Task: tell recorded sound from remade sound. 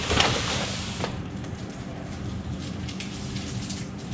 remade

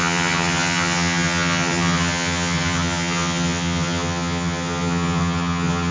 remade